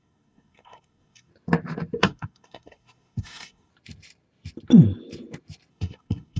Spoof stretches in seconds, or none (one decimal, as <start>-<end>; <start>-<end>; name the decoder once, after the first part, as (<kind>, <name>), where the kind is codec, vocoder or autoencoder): 0.0-1.3 (codec, SNAC); 2.0-3.7; 5.7-6.4